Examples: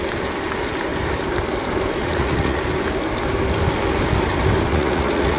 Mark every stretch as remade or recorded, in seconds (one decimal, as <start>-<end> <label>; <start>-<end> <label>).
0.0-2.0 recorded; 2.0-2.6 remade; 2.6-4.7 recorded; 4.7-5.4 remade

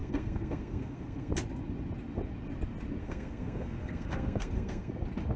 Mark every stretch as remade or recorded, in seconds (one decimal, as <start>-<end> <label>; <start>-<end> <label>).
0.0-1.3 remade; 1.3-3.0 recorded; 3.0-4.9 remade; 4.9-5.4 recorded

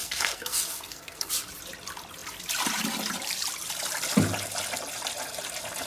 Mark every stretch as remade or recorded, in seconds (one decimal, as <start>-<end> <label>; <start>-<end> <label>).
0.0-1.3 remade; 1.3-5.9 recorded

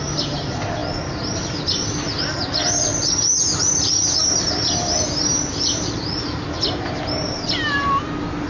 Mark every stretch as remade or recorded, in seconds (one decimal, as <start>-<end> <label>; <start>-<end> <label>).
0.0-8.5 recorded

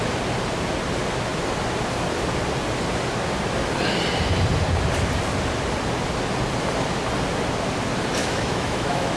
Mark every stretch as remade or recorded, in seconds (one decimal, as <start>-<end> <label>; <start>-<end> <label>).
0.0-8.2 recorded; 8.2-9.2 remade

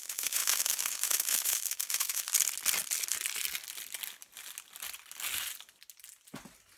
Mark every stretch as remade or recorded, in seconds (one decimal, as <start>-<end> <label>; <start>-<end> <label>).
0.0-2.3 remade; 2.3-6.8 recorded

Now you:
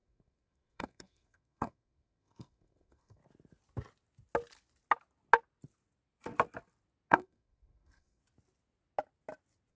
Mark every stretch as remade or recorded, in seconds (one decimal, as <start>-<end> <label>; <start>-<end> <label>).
0.0-3.2 remade; 3.2-7.1 recorded; 7.1-8.2 remade; 8.2-9.7 recorded

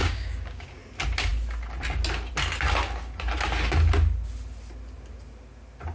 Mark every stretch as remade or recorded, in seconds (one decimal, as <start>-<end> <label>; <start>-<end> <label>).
0.0-0.8 remade; 0.8-5.9 recorded